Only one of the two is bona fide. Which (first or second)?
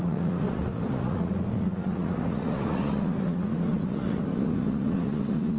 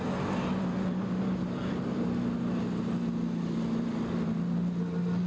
second